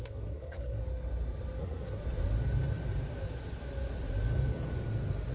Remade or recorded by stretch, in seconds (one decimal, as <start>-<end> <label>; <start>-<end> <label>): 0.0-0.8 remade; 0.8-1.6 recorded; 1.6-2.0 remade; 2.0-5.3 recorded